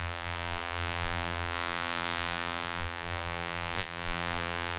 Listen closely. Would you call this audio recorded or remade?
remade